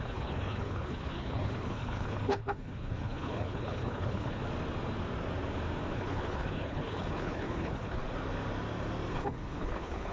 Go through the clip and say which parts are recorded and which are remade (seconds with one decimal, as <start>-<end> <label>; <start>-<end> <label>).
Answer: 0.0-4.4 remade; 4.4-5.9 recorded; 5.9-8.0 remade; 8.0-9.1 recorded; 9.1-10.1 remade